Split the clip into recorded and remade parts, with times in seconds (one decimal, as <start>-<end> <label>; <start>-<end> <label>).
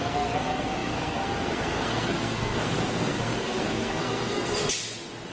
0.0-4.5 remade; 4.5-5.3 recorded